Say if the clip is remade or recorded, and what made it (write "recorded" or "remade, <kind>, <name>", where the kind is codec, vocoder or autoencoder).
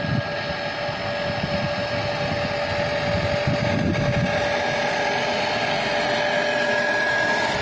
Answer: recorded